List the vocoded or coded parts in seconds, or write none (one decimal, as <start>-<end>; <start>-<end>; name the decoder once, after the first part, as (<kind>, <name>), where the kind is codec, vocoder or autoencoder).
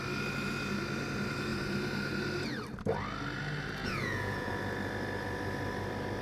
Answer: 3.8-4.5 (vocoder, Vocos)